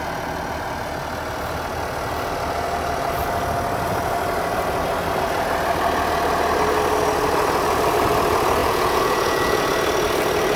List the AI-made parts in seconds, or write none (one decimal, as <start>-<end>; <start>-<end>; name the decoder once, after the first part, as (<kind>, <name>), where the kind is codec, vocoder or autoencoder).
8.6-9.7 (vocoder, Vocos)